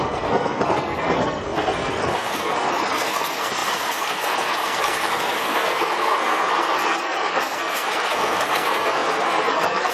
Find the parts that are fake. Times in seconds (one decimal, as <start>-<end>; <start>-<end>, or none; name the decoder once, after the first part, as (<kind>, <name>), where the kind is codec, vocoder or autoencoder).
0.0-9.9 (codec, SNAC)

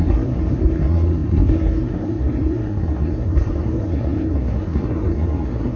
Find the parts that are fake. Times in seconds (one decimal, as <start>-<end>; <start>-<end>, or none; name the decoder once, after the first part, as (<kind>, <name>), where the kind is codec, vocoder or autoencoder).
0.0-5.8 (codec, SNAC)

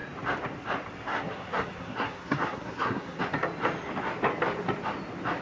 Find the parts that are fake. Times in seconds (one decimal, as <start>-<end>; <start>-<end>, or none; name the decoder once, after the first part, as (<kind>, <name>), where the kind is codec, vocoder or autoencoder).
1.1-3.2 (codec, SNAC)